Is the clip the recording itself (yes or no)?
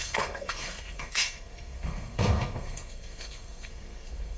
no